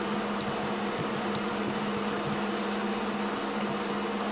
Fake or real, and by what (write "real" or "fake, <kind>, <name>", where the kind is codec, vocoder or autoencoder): real